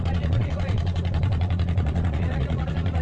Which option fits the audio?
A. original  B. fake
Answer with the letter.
B